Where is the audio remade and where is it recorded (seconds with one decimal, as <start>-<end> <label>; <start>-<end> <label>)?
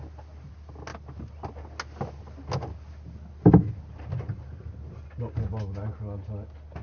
0.0-6.8 recorded